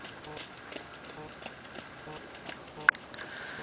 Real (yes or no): yes